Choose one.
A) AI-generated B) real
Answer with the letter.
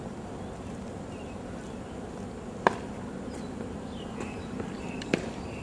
B